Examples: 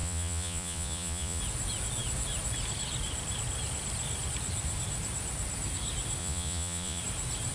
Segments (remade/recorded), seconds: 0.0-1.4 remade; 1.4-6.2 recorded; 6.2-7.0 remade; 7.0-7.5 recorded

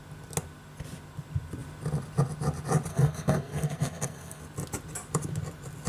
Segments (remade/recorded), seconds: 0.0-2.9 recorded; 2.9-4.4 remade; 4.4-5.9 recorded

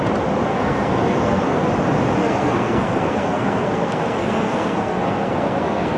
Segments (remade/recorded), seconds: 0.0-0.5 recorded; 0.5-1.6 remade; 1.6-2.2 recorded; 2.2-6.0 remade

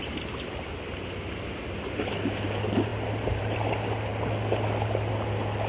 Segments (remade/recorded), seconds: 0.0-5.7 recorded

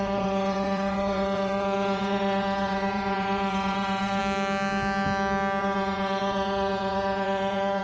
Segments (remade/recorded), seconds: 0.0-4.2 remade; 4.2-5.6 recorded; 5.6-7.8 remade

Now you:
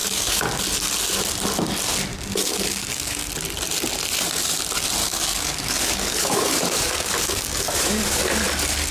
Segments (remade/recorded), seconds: 0.0-0.6 remade; 0.6-2.1 recorded; 2.1-3.3 remade; 3.3-5.0 recorded; 5.0-8.2 remade; 8.2-8.9 recorded

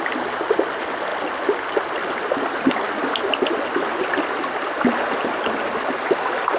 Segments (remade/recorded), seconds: 0.0-6.6 recorded